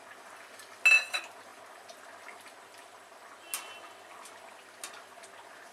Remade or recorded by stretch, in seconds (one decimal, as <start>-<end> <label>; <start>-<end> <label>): 0.0-5.7 recorded